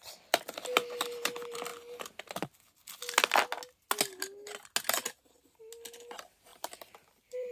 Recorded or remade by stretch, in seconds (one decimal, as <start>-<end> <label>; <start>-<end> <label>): 0.0-1.7 remade; 1.7-6.1 recorded; 6.1-7.5 remade